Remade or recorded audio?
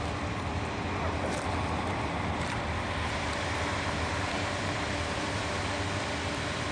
remade